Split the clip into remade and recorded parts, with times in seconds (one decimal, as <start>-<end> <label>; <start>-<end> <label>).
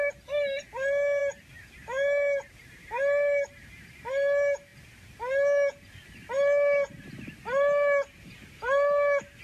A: 0.0-9.4 recorded